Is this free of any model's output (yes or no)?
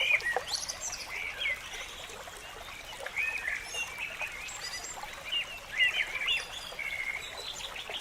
yes